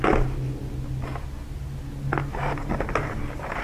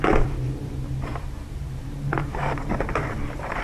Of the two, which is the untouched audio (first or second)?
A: first